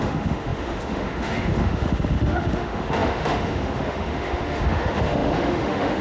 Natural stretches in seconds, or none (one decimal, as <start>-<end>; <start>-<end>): none